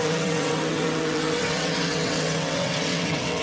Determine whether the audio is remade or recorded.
remade